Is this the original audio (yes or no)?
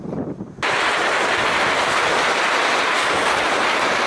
yes